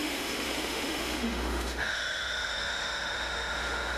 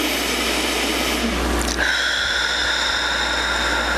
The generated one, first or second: first